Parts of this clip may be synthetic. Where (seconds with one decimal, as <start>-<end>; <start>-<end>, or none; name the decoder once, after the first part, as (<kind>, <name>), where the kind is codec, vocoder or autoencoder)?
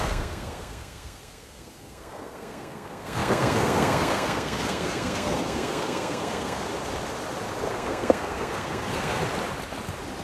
0.0-6.7 (codec, SNAC); 7.7-9.2